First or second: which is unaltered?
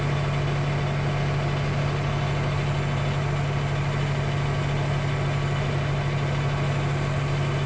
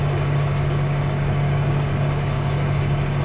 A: first